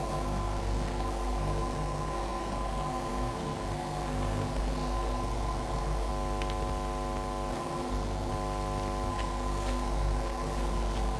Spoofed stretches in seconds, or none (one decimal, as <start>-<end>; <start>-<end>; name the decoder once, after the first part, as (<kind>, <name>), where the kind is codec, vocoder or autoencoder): 0.0-6.1 (codec, SNAC); 7.5-8.3; 9.1-11.2